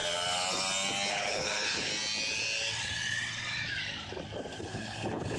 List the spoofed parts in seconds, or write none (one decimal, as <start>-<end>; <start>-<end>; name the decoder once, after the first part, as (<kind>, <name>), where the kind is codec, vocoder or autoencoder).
1.1-1.9 (codec, HILCodec); 4.6-5.4